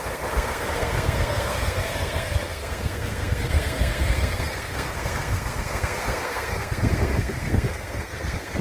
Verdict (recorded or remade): remade